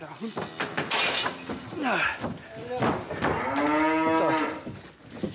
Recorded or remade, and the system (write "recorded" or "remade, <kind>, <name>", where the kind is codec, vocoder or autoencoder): recorded